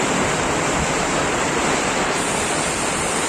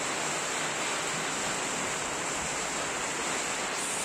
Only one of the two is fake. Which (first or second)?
first